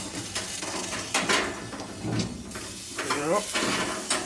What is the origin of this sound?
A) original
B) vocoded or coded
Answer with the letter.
A